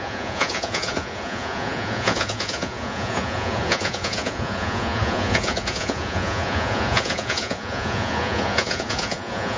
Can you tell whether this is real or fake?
fake